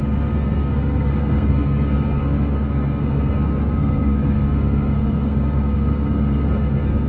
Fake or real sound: fake